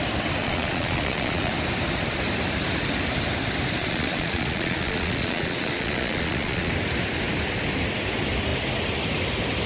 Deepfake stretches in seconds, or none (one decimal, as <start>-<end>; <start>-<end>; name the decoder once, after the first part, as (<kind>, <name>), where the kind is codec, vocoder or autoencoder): 0.4-1.5 (vocoder, Vocos); 3.8-6.7